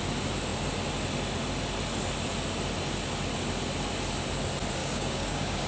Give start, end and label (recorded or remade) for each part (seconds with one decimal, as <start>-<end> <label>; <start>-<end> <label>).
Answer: 0.0-4.8 recorded; 4.8-5.7 remade